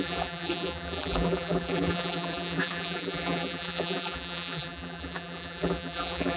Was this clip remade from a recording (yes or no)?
yes